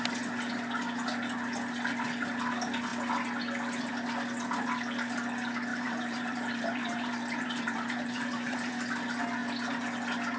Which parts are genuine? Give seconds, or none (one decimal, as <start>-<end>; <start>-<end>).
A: 0.0-5.7; 8.7-10.4